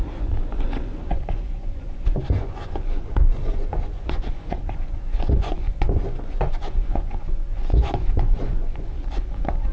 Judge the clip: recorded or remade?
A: remade